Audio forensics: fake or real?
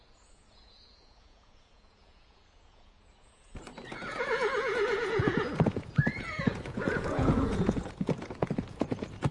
fake